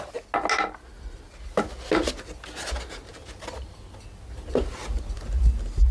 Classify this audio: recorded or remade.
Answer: recorded